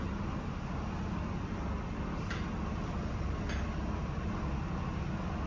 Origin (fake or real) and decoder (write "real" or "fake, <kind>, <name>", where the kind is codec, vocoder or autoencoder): real